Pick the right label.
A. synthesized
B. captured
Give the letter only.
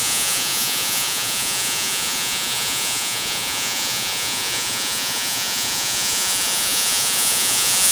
A